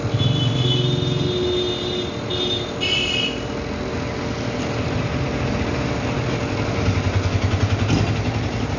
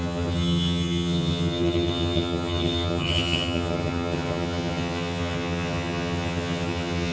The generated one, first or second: second